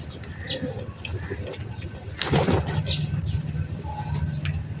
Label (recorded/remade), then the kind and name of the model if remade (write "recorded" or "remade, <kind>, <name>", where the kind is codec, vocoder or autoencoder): recorded